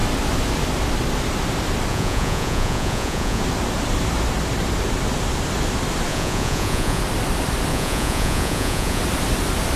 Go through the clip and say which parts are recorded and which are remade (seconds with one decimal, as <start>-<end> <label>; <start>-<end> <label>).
0.0-1.9 recorded; 1.9-3.4 remade; 3.4-6.1 recorded; 6.1-7.0 remade; 7.0-7.7 recorded; 7.7-9.0 remade; 9.0-9.8 recorded